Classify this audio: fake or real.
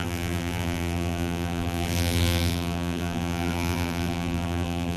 fake